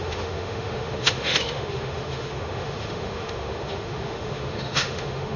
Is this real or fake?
fake